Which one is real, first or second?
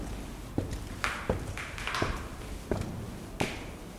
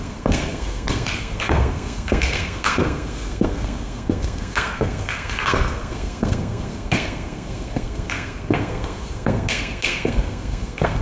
first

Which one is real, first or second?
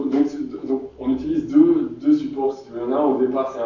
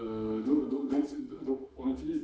first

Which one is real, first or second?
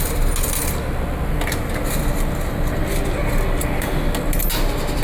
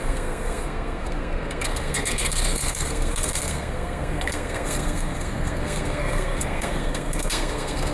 first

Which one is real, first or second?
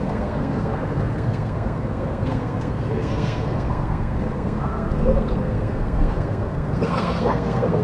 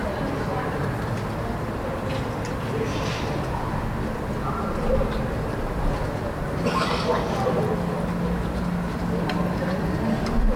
second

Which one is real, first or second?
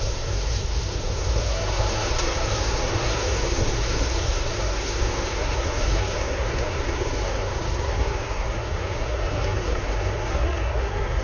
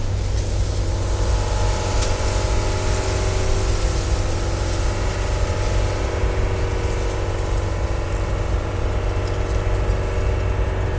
second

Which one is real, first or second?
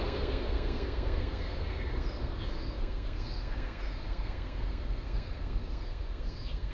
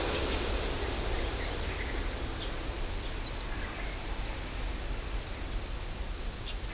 second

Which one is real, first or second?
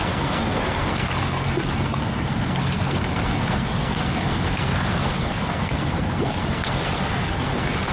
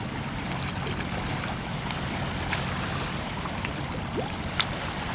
second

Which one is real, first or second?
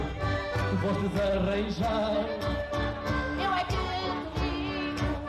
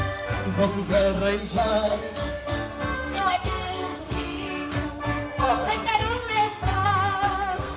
first